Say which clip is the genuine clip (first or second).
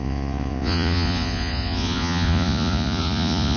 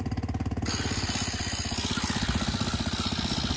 second